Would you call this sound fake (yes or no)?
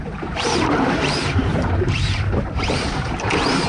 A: yes